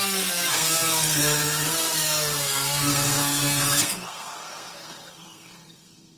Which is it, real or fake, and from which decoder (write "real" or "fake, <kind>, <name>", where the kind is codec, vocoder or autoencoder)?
fake, codec, SNAC